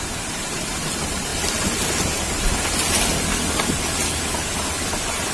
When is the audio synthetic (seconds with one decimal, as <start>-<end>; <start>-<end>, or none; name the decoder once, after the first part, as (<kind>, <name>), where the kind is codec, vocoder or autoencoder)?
none